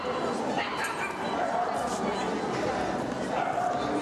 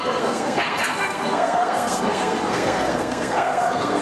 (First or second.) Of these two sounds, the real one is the first